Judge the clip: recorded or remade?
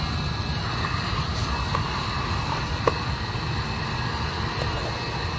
recorded